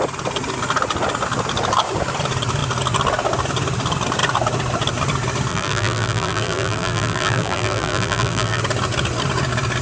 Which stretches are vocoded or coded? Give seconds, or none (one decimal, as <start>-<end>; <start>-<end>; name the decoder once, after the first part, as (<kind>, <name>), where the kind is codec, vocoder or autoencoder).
5.5-8.6 (vocoder, BigVGAN v2)